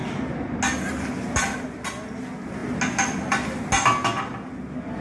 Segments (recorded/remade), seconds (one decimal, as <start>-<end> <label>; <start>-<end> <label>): 0.0-5.0 recorded